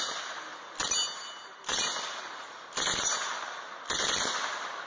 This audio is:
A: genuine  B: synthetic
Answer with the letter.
A